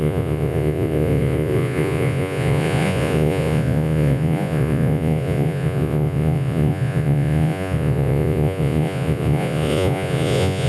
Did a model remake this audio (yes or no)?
yes